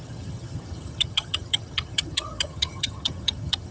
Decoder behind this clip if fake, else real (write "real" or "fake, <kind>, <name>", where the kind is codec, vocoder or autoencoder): fake, vocoder, HiFi-GAN